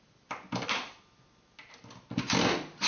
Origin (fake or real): real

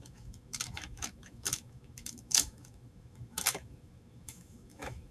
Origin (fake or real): fake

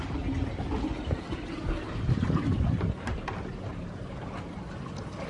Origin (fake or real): real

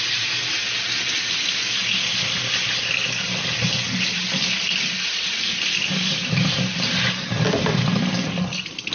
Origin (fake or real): real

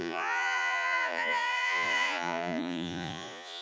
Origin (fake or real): fake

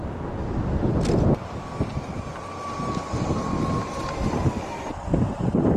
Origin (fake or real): real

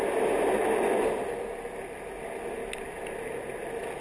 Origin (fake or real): real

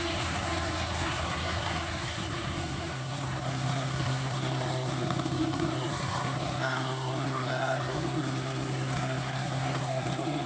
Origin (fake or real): fake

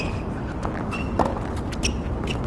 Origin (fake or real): real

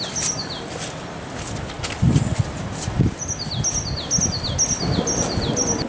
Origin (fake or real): real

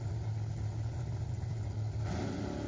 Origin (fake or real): real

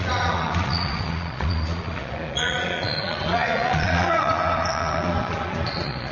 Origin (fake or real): fake